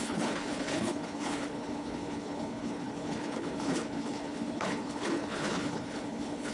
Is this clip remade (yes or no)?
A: yes